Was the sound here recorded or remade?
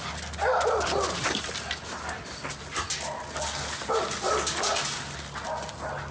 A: recorded